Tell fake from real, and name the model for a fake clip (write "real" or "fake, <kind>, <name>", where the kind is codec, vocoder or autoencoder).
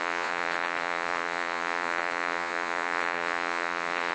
fake, vocoder, Vocos